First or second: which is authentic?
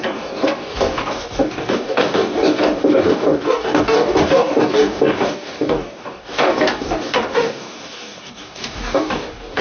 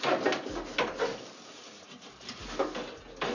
second